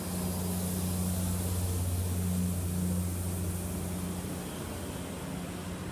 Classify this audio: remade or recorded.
recorded